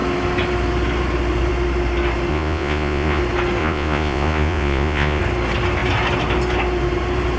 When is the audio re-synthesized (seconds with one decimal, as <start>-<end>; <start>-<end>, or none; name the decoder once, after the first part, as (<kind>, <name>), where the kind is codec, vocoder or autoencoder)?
2.3-3.2 (vocoder, Vocos); 3.6-5.2